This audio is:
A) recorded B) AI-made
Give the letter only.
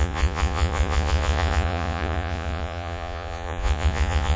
B